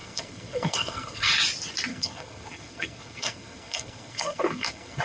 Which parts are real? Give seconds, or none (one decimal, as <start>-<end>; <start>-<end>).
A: 1.3-1.9